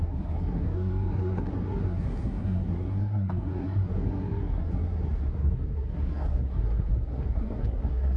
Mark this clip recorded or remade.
remade